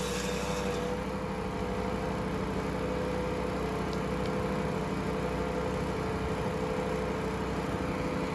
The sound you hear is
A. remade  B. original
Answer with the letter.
B